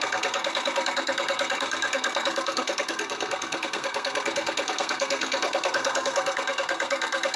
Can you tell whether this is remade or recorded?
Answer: remade